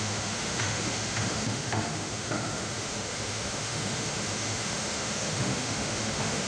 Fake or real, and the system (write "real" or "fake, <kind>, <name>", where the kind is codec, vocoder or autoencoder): fake, autoencoder, DAC-VAE